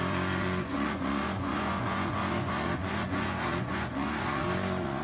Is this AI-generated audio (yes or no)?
yes